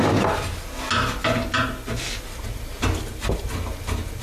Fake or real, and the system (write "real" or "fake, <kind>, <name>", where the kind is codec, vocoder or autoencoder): real